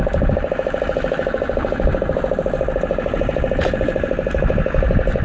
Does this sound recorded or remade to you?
recorded